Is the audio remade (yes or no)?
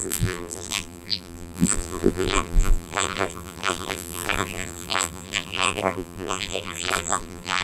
yes